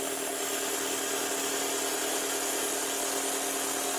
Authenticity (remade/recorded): recorded